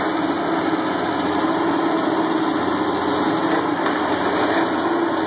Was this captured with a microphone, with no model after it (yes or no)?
yes